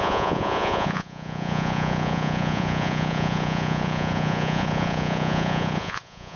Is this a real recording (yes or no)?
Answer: no